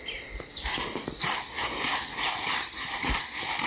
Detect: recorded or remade recorded